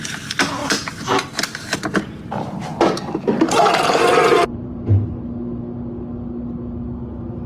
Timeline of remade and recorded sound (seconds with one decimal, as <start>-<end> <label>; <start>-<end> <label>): 0.0-0.6 recorded; 0.6-5.1 remade; 5.1-7.5 recorded